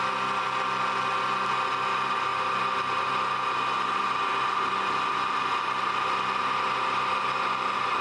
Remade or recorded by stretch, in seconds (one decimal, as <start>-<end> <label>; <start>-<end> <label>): 0.0-8.0 recorded